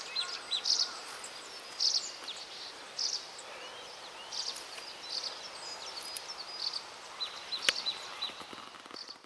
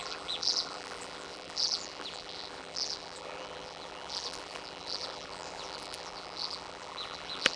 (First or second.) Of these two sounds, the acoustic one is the first